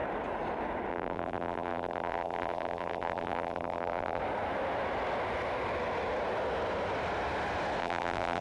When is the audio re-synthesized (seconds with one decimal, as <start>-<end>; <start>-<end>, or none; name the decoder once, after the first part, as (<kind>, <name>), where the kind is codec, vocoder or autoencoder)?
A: 0.9-4.2 (vocoder, BigVGAN v2); 7.8-8.4